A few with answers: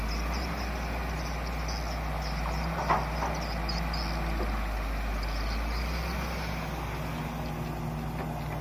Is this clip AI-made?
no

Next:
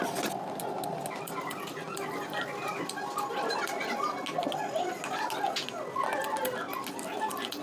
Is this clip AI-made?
no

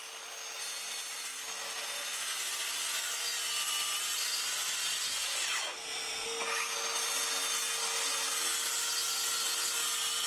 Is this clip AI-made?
no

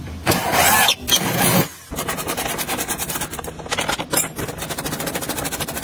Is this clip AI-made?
no